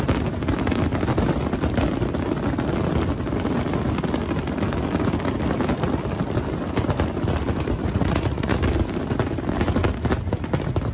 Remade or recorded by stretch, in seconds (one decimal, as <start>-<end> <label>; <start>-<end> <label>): 0.0-7.8 recorded; 7.8-8.6 remade; 8.6-10.9 recorded